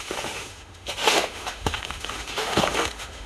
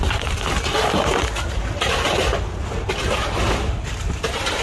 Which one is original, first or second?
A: second